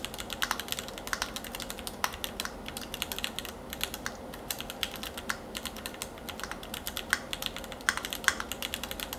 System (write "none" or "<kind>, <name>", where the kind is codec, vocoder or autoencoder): none